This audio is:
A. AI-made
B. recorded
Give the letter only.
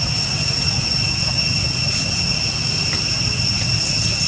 B